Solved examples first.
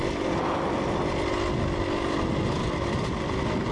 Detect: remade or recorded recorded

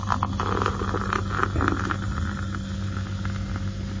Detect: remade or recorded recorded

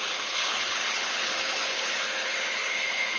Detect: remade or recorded remade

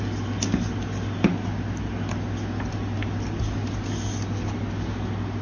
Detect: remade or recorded recorded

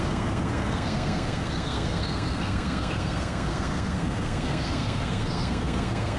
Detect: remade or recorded remade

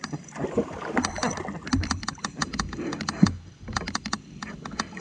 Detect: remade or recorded recorded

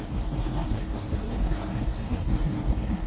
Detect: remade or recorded remade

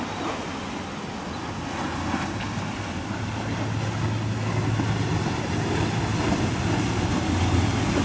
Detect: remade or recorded recorded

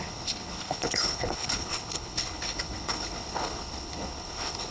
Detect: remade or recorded remade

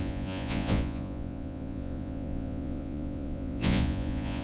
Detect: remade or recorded remade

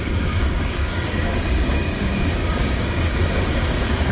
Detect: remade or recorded remade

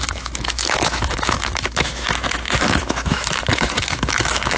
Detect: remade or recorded remade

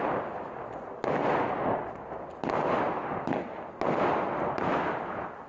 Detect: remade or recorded recorded